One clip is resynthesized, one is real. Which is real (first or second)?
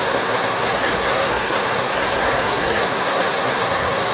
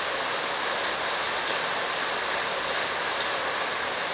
second